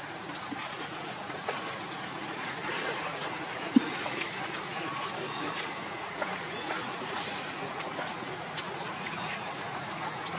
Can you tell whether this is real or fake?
fake